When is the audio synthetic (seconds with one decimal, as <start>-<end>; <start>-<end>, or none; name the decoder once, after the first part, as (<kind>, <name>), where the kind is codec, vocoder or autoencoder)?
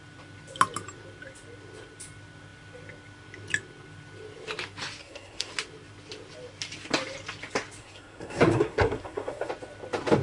5.0-5.5 (codec, SNAC); 7.8-9.5